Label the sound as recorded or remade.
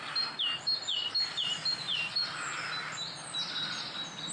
recorded